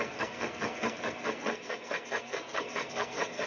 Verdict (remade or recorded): remade